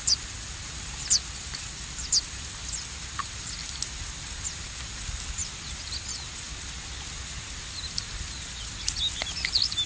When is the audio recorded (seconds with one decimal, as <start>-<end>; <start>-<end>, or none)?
0.0-9.9